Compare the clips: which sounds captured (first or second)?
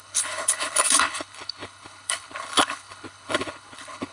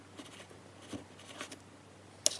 second